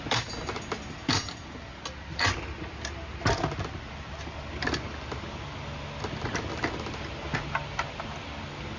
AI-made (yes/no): no